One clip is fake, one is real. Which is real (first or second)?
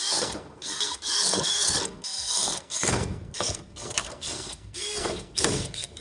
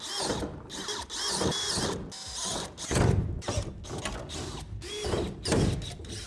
second